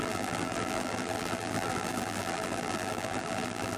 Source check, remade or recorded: remade